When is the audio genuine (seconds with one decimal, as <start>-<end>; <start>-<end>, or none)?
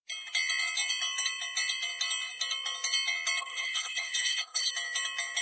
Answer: 0.0-3.4; 4.7-5.4